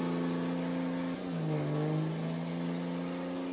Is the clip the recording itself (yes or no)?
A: yes